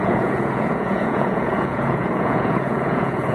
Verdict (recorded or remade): remade